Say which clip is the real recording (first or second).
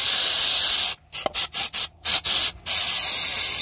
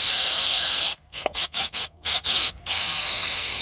first